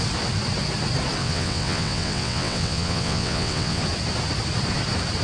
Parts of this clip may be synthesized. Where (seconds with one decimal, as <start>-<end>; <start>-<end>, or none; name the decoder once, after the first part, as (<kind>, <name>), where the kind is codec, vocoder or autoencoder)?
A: 1.2-3.8 (vocoder, WaveNeXt)